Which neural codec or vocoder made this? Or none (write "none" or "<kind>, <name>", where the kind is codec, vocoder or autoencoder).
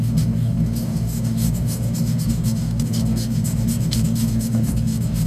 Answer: codec, DAC